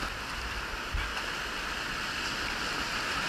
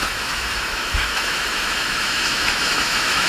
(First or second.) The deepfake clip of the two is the second